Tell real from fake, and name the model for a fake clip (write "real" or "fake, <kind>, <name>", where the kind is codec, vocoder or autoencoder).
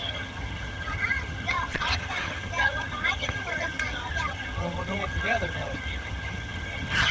fake, vocoder, HiFi-GAN